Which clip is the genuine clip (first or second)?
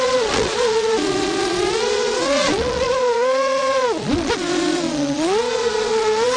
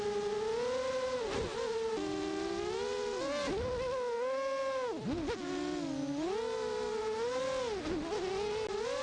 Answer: second